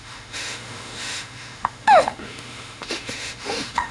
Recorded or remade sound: remade